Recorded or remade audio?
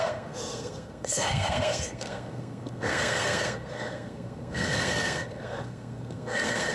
remade